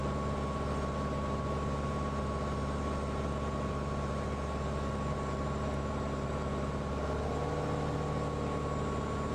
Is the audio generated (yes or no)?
no